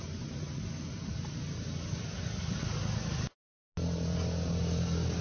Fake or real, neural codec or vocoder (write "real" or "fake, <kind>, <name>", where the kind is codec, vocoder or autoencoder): real